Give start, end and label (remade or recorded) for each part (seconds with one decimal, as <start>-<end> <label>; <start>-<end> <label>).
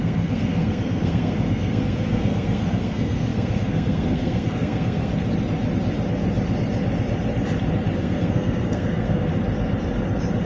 0.0-5.1 remade; 5.1-8.0 recorded; 8.0-9.3 remade; 9.3-10.5 recorded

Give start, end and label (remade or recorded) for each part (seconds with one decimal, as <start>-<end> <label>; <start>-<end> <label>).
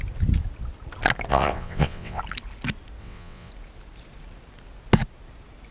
0.0-1.3 recorded; 1.3-2.2 remade; 2.2-3.0 recorded; 3.0-3.5 remade; 3.5-5.7 recorded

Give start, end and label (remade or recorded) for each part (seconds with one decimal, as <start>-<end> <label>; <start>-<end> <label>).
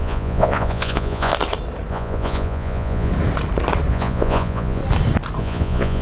0.0-1.3 remade; 1.3-1.9 recorded; 1.9-3.1 remade; 3.1-3.9 recorded; 3.9-4.8 remade; 4.8-5.4 recorded; 5.4-6.0 remade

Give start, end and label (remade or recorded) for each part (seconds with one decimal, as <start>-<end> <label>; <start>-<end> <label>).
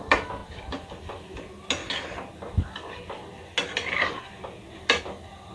0.0-5.5 recorded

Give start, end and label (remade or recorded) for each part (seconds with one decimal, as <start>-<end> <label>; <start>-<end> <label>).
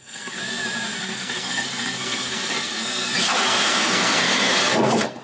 0.0-0.4 remade; 0.4-1.0 recorded; 1.0-5.2 remade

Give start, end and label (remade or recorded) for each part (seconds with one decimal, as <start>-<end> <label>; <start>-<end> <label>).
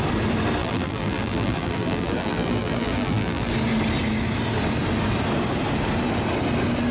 0.0-0.6 recorded; 0.6-3.5 remade; 3.5-6.9 recorded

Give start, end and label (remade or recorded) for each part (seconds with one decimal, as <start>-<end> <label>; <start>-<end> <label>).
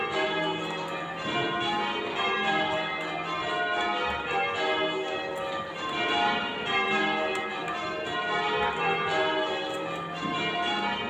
0.0-11.1 recorded